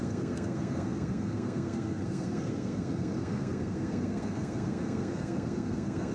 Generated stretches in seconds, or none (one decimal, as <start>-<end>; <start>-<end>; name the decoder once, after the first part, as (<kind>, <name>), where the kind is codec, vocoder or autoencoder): 0.0-6.1 (codec, SNAC)